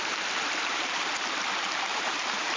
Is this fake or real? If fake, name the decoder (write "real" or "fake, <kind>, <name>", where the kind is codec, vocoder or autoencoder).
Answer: fake, vocoder, BigVGAN v2